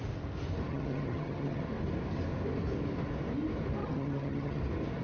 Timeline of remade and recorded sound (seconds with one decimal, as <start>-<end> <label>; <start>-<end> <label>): 0.0-0.7 recorded; 0.7-1.6 remade; 1.6-3.8 recorded; 3.8-4.6 remade; 4.6-5.0 recorded